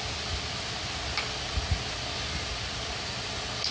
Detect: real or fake real